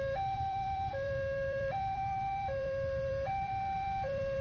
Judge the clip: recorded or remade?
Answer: remade